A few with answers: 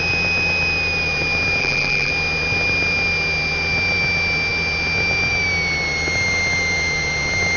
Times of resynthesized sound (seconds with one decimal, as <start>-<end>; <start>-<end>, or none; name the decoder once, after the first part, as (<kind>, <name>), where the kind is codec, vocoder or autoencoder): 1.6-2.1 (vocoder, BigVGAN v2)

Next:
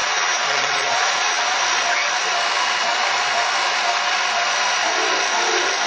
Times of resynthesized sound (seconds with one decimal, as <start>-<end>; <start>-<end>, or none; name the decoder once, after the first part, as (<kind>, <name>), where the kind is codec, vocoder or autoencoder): 0.0-1.6 (vocoder, Vocos)

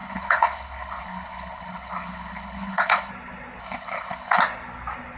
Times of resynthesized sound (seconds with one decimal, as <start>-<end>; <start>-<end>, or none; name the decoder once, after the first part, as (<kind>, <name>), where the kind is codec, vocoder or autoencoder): 0.0-3.1 (codec, HILCodec); 3.6-4.4

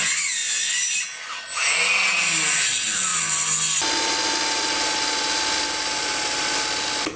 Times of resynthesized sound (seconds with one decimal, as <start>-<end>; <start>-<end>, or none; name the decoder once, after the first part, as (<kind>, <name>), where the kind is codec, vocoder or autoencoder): none

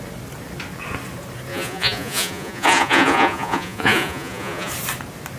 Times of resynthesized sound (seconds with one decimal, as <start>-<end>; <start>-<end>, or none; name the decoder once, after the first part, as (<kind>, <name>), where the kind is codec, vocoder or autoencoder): 1.5-4.7 (vocoder, Vocos)